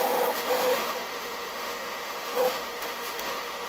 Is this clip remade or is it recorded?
remade